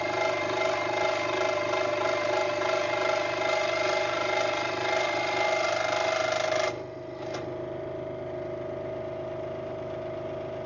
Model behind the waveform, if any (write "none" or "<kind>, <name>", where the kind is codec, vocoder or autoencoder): none